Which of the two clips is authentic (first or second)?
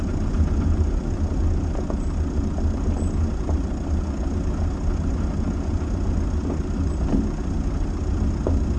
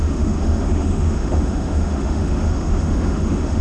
first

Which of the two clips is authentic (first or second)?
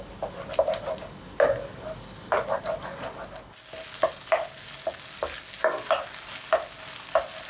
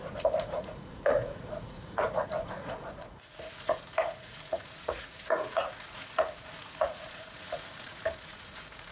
first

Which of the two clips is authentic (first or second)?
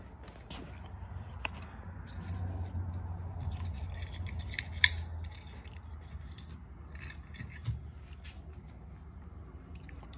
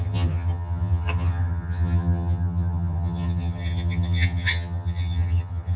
first